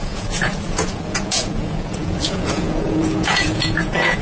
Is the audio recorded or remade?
remade